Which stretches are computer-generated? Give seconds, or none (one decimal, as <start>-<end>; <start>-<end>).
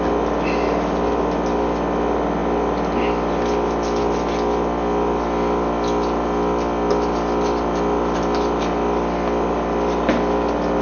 none